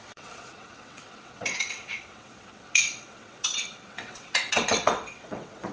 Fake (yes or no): yes